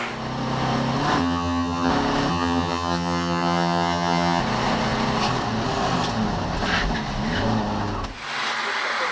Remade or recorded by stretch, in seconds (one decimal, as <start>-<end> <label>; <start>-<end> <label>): 0.0-1.2 recorded; 1.2-1.9 remade; 1.9-2.3 recorded; 2.3-4.4 remade; 4.4-9.1 recorded